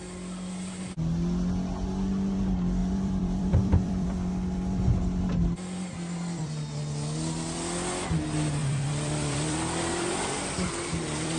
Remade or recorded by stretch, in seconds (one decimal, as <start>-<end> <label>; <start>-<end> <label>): 0.0-2.8 recorded; 2.8-4.3 remade; 4.3-8.6 recorded; 8.6-11.4 remade